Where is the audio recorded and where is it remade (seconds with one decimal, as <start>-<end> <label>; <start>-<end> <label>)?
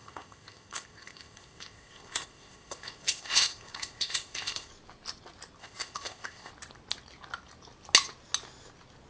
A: 0.0-4.7 remade; 4.7-5.6 recorded; 5.6-6.5 remade; 6.5-9.1 recorded